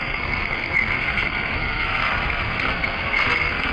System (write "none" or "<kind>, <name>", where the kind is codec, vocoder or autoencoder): codec, SNAC